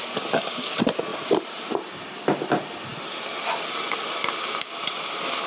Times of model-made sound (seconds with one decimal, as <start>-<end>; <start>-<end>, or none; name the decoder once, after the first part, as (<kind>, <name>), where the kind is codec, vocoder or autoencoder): 1.1-2.0 (vocoder, BigVGAN v2)